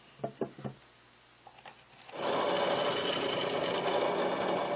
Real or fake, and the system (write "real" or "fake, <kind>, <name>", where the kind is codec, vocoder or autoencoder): real